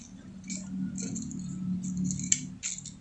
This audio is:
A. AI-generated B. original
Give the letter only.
B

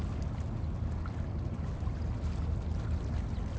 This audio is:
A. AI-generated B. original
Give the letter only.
B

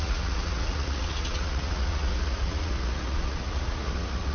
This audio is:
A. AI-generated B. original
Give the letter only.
A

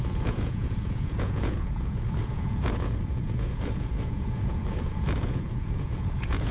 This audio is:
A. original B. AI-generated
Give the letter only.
B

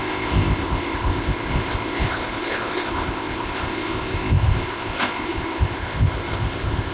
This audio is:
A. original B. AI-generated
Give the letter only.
B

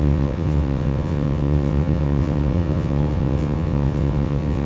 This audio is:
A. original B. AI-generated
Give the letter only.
B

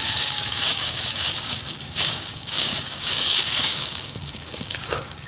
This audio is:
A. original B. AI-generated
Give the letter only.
B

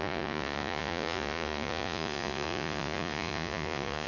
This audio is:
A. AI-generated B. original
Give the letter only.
A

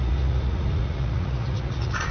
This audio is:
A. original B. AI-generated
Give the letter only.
B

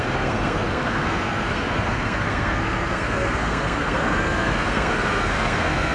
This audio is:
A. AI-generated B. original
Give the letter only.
A